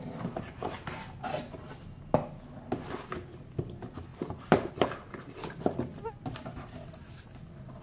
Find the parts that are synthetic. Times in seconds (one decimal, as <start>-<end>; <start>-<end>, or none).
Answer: 4.1-4.7